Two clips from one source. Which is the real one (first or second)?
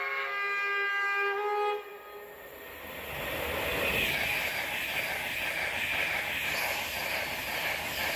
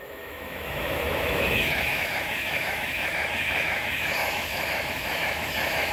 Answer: first